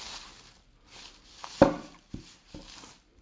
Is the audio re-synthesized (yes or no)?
no